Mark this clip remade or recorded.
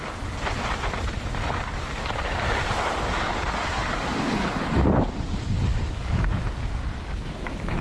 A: recorded